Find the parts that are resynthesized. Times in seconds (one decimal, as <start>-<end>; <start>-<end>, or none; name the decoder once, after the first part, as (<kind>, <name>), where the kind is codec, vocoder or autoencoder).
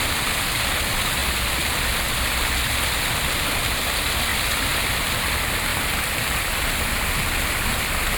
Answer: 4.3-4.9 (vocoder, BigVGAN v2); 5.7-8.2